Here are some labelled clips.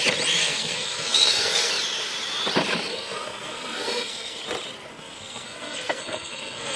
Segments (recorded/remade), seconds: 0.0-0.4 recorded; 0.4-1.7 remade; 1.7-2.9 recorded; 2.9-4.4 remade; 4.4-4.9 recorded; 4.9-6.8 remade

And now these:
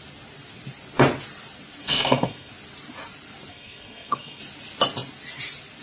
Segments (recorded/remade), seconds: 0.0-1.8 recorded; 1.8-2.5 remade; 2.5-3.5 recorded; 3.5-4.4 remade; 4.4-5.8 recorded

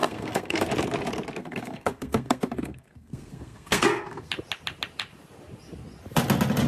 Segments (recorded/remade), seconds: 0.0-0.7 remade; 0.7-1.4 recorded; 1.4-4.3 remade; 4.3-6.7 recorded